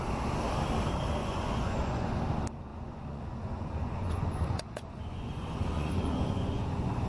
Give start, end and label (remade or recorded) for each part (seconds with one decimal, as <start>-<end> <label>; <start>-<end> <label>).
0.0-1.2 recorded; 1.2-2.2 remade; 2.2-2.7 recorded; 2.7-7.1 remade